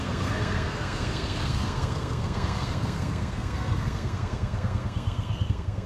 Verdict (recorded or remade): remade